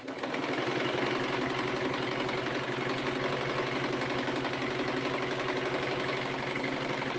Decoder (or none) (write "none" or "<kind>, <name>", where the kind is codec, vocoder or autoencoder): none